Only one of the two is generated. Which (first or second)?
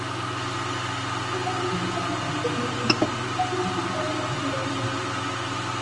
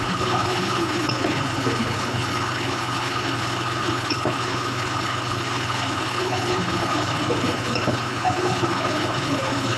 second